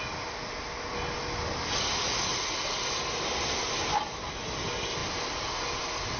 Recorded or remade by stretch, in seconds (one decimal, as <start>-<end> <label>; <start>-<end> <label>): 0.0-2.3 recorded; 2.3-3.0 remade; 3.0-6.2 recorded